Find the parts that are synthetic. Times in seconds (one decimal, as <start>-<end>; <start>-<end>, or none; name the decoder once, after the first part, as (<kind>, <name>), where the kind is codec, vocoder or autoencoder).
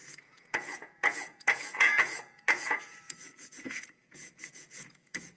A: 0.0-5.4 (vocoder, Vocos)